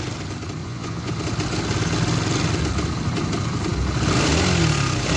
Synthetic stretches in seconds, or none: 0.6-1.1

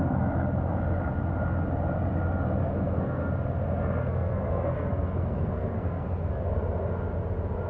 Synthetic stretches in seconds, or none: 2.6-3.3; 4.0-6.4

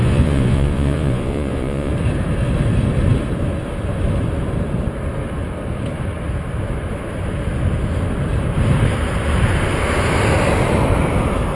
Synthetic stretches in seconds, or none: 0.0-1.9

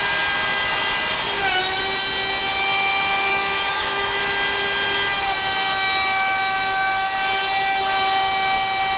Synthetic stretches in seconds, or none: 3.3-4.2

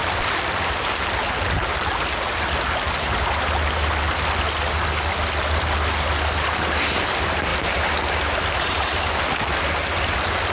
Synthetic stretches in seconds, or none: 0.0-0.7

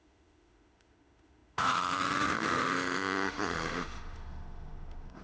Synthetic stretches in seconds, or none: 0.0-5.2

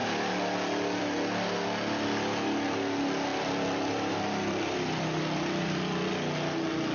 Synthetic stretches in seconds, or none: 3.3-6.1

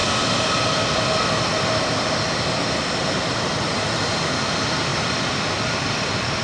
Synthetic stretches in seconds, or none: none